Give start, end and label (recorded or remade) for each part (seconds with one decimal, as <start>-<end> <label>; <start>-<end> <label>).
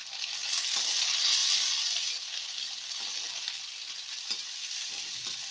0.0-5.5 recorded